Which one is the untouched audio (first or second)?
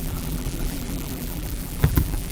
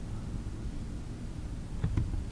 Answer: second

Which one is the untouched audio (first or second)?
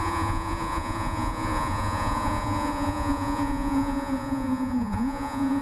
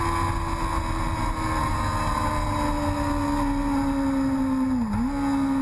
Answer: second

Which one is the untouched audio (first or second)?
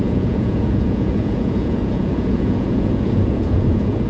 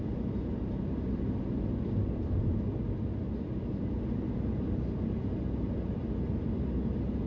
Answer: second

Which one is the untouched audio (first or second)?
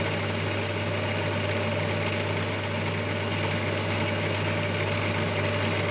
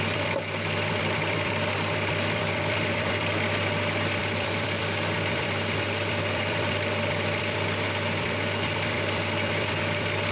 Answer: first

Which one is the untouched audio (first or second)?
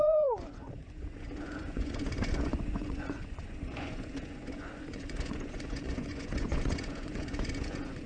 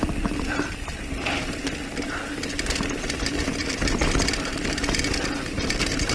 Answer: second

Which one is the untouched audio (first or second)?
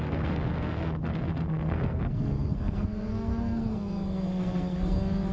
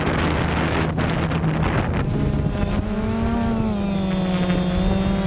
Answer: second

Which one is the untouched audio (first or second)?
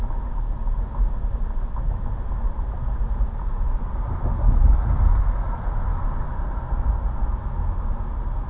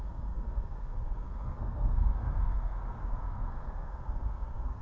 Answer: first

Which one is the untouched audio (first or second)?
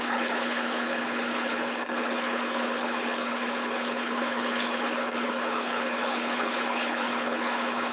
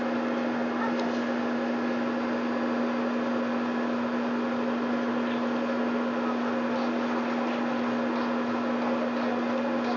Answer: second